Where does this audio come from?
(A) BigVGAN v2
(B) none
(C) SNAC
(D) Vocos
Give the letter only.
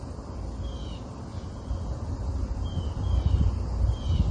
B